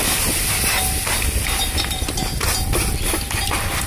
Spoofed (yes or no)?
no